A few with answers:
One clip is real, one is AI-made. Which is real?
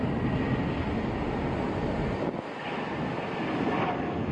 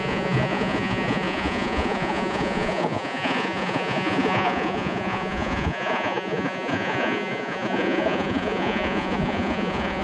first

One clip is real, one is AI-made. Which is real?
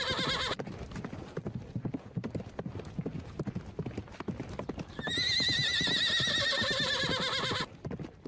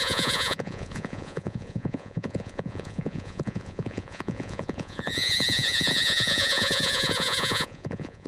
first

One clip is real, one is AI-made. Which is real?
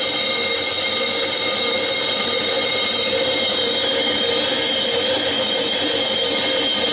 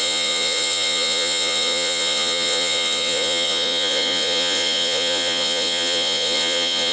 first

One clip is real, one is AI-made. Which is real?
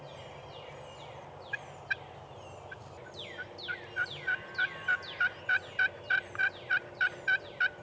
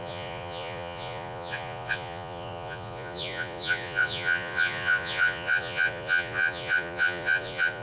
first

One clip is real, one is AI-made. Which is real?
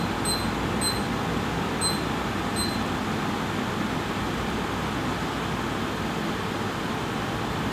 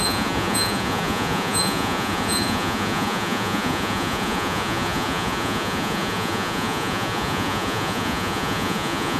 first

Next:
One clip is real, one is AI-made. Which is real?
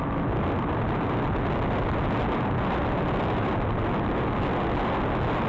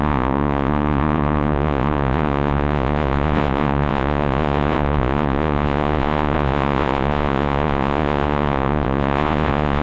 first